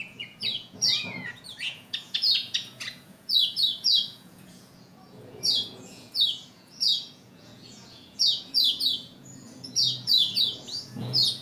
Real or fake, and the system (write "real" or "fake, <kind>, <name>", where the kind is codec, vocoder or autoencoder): fake, vocoder, Vocos